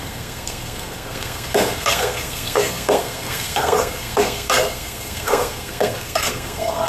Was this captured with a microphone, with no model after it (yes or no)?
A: no